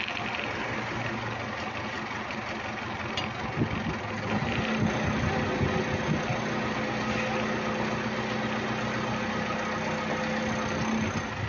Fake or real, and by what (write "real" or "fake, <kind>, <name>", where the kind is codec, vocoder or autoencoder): real